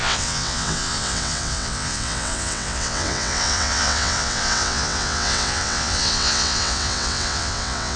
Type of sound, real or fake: fake